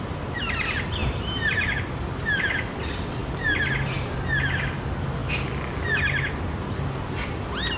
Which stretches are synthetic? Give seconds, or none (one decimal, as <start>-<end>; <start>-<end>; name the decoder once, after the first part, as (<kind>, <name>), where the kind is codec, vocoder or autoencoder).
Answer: 1.0-1.8 (vocoder, BigVGAN v2); 6.5-7.1